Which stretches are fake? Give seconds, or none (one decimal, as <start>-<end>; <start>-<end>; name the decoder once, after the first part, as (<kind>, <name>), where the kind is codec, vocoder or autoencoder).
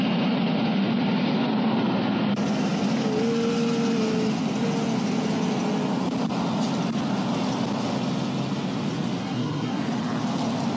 9.2-9.8 (codec, SNAC)